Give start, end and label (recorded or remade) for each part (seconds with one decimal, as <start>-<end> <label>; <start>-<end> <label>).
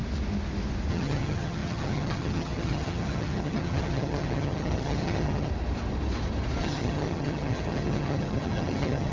0.0-0.9 recorded; 0.9-5.5 remade; 5.5-6.6 recorded; 6.6-9.1 remade